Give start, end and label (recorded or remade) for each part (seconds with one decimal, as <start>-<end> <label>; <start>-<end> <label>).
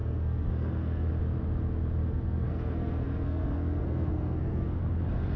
0.0-1.1 remade; 1.1-2.0 recorded; 2.0-4.8 remade; 4.8-5.4 recorded